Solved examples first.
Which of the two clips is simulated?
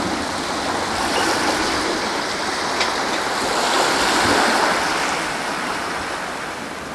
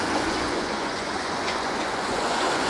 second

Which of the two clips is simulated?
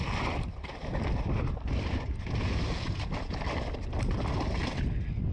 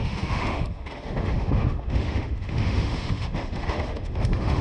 second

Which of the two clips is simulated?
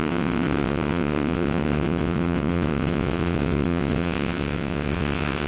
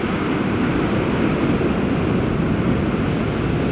first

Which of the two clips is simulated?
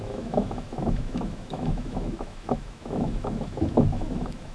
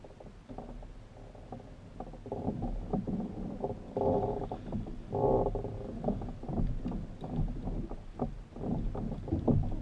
first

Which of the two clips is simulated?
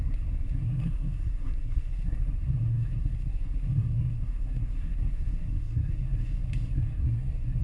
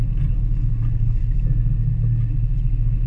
first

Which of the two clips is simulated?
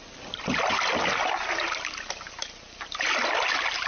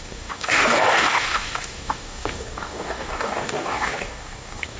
second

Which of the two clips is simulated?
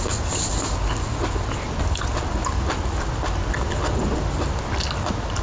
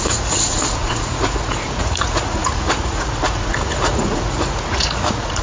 second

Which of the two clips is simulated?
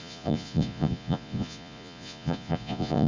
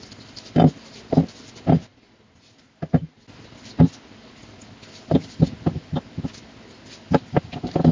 first